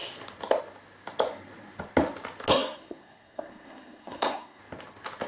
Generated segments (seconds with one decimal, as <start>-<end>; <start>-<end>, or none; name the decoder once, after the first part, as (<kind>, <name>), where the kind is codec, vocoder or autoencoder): 2.5-4.6 (codec, SNAC)